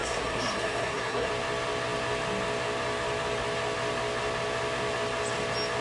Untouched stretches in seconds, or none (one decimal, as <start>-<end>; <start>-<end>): 1.3-5.8